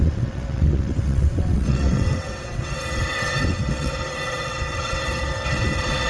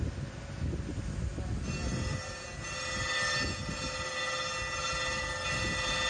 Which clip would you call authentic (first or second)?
second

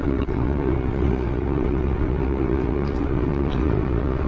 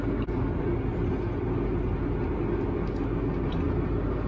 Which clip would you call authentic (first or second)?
second